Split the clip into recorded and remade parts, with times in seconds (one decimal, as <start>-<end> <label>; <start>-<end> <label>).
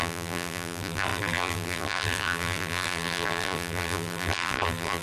0.0-5.0 remade